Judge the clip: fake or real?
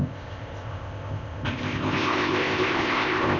fake